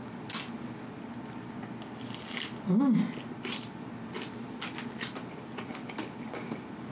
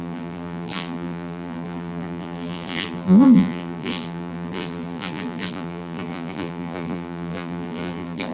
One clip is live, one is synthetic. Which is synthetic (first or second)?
second